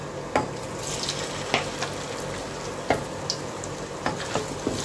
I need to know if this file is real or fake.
real